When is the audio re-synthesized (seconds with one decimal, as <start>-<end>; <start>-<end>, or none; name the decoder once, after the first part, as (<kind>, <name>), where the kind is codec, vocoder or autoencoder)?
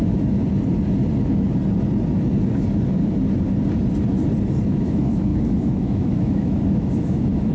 0.0-0.4 (autoencoder, DAC-VAE); 4.7-7.5